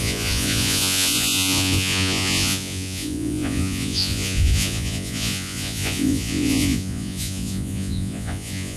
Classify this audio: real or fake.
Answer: fake